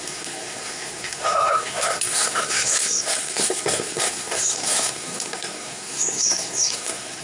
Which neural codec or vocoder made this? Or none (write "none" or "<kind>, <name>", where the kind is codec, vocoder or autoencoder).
codec, SNAC